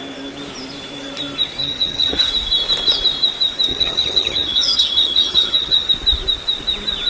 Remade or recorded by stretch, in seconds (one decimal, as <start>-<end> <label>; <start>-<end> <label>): 0.0-1.6 recorded; 1.6-2.3 remade; 2.3-3.7 recorded; 3.7-5.9 remade; 5.9-7.1 recorded